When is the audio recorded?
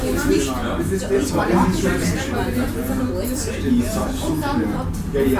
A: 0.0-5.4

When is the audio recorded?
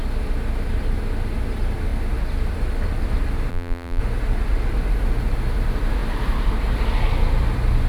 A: 0.0-3.5; 4.0-7.9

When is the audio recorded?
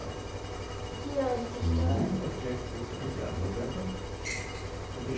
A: 0.0-5.2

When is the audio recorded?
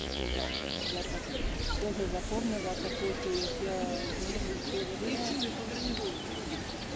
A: 0.8-7.0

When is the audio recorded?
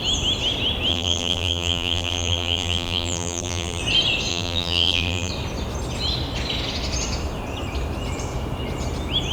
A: 0.0-0.9; 3.8-4.3; 5.3-9.3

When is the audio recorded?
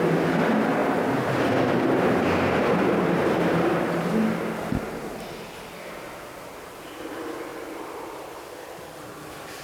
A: 0.0-0.8; 3.9-7.5; 8.4-9.6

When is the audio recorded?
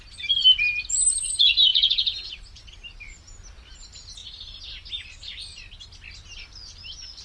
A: 0.0-1.7; 2.6-7.2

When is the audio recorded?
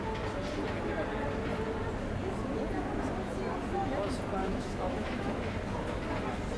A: 0.0-4.4; 5.5-6.6